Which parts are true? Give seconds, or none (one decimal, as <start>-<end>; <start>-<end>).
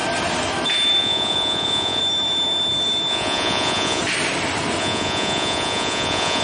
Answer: 0.0-1.0; 2.0-3.1; 4.0-4.8